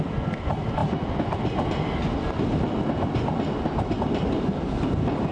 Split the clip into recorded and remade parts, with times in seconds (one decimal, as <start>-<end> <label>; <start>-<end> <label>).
0.0-5.3 recorded